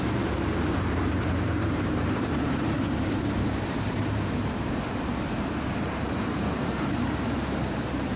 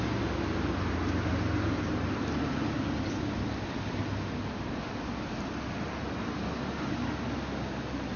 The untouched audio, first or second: second